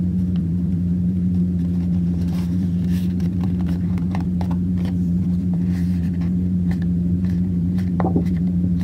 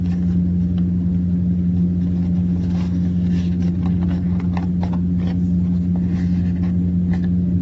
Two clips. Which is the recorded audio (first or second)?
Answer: second